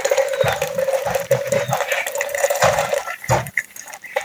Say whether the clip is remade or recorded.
remade